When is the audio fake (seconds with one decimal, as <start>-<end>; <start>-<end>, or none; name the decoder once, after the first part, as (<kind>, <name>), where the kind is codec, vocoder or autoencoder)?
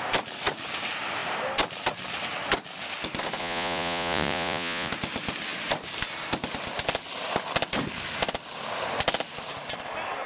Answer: 3.4-4.9 (vocoder, Vocos)